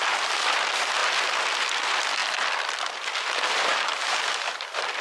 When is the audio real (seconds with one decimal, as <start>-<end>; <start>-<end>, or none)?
1.0-1.8; 2.2-2.9